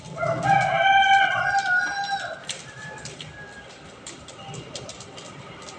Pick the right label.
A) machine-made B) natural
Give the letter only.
B